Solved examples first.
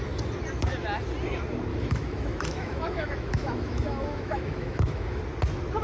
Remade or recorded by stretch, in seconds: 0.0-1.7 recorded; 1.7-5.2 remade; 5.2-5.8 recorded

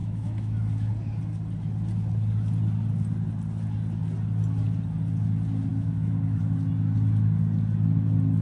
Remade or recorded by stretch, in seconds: 0.0-0.9 remade; 0.9-5.7 recorded; 5.7-6.4 remade; 6.4-8.4 recorded

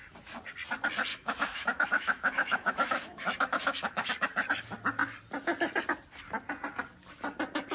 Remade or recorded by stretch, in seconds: 0.0-1.1 recorded; 1.1-4.1 remade; 4.1-7.7 recorded

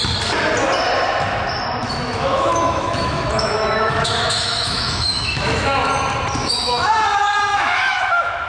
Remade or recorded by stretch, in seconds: 0.0-1.8 recorded; 1.8-5.9 remade; 5.9-6.4 recorded; 6.4-6.9 remade; 6.9-7.5 recorded; 7.5-8.5 remade

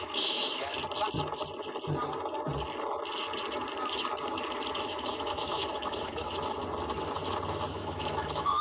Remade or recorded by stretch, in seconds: 0.0-0.7 remade; 0.7-4.8 recorded; 4.8-6.6 remade; 6.6-7.7 recorded; 7.7-8.6 remade

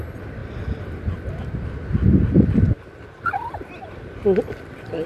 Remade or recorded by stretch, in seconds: 0.0-5.1 recorded